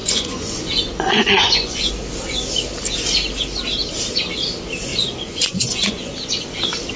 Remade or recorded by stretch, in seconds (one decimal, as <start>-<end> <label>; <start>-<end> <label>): 0.0-1.9 remade; 1.9-4.9 recorded; 4.9-6.1 remade; 6.1-7.0 recorded